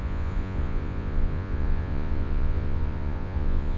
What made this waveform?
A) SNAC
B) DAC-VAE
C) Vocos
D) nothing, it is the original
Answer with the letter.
C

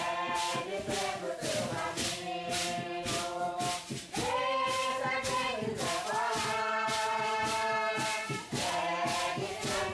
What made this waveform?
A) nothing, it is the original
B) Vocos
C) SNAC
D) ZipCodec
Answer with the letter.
A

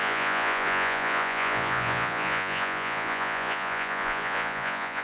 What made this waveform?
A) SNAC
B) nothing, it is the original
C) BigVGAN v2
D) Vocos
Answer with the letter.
D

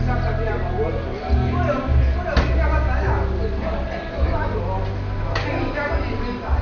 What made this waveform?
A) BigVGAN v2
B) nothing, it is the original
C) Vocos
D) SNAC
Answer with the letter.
B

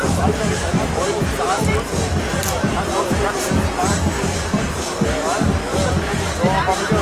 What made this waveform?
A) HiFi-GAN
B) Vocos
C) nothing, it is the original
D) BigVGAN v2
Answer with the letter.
C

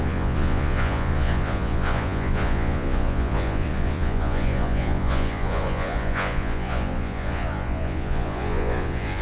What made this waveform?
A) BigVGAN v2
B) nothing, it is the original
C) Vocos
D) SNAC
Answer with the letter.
C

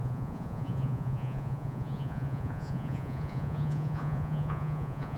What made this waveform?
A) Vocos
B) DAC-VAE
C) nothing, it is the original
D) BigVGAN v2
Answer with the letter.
A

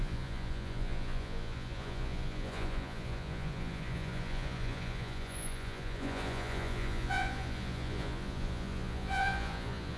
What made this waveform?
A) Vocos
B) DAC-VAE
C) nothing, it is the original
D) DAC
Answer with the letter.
A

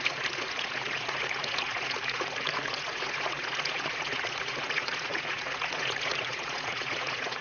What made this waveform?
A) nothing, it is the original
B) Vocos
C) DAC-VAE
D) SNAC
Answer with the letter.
B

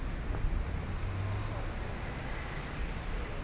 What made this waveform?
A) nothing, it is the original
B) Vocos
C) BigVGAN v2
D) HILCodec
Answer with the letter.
A